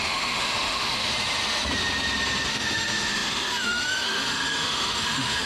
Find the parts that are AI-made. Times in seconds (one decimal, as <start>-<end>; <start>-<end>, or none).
0.0-1.1; 2.5-5.5